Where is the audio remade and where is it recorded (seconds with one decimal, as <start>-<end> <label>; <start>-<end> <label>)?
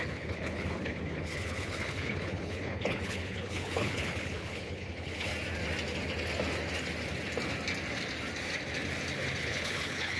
0.0-5.3 remade; 5.3-9.4 recorded; 9.4-10.2 remade